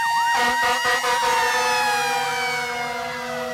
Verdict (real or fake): real